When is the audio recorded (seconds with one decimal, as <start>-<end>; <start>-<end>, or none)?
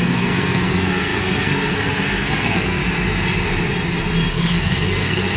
2.8-4.3